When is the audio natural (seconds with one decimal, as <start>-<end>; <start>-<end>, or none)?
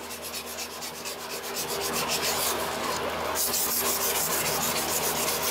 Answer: 0.0-5.5